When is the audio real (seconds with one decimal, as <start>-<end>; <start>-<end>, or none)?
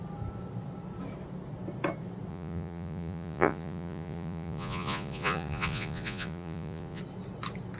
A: 0.0-2.3; 7.0-7.8